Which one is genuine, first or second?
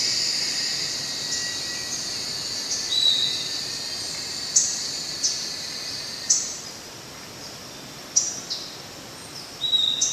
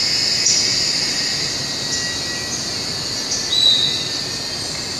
second